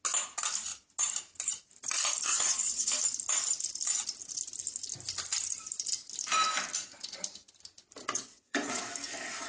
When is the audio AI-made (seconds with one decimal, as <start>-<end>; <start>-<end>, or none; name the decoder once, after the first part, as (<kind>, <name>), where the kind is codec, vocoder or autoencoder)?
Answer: 2.3-3.0 (vocoder, WaveNeXt); 8.0-8.8